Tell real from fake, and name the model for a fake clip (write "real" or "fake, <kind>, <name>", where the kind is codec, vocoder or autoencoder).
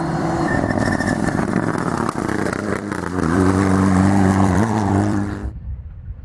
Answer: fake, vocoder, BigVGAN v2